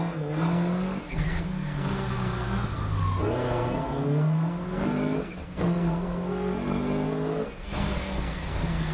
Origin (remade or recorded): remade